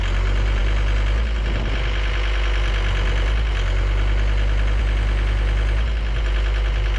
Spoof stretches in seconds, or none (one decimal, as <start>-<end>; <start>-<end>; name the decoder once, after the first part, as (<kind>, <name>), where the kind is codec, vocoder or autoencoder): none